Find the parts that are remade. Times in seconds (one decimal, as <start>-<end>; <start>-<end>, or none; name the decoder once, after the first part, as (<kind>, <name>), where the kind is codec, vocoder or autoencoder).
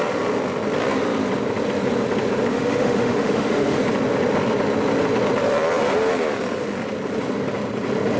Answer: 2.5-3.8 (autoencoder, DAC-VAE)